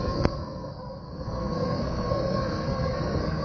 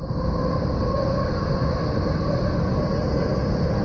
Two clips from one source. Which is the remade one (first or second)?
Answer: first